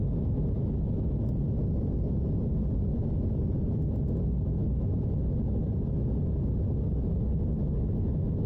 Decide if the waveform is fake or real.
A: real